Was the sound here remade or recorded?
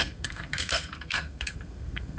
remade